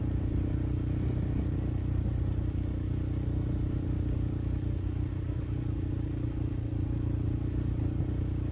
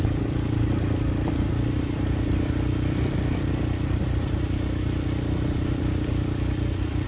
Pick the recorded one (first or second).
first